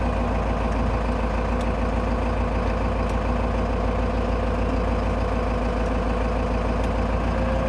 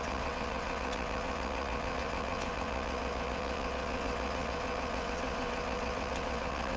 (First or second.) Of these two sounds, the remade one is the second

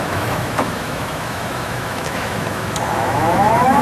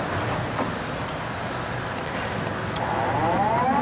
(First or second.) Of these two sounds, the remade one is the first